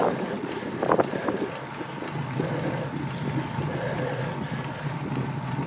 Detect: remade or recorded recorded